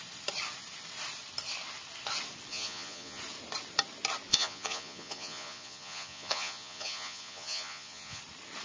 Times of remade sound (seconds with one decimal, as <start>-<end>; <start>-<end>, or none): 2.5-3.2; 4.3-8.2